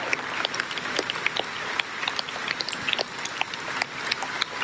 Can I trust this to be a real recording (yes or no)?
yes